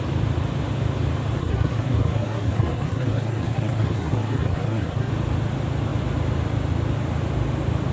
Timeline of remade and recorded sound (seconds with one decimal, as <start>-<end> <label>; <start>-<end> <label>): 0.0-1.4 recorded; 1.4-5.1 remade; 5.1-7.9 recorded